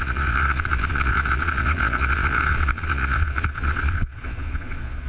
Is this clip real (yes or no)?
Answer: no